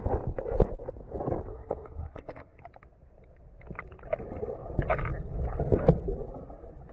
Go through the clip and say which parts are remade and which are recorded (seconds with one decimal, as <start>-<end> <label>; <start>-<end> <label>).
0.0-1.5 recorded; 1.5-2.6 remade; 2.6-6.9 recorded